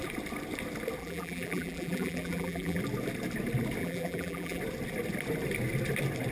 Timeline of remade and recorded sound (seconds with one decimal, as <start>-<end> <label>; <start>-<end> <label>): 0.0-1.0 recorded; 1.0-2.8 remade; 2.8-3.8 recorded; 3.8-4.6 remade; 4.6-6.3 recorded